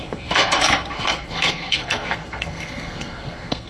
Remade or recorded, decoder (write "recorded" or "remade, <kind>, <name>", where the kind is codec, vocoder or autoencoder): remade, codec, SNAC